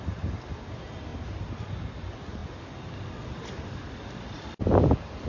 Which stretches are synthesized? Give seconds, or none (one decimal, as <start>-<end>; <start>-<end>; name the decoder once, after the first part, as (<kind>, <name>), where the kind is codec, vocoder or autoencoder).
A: none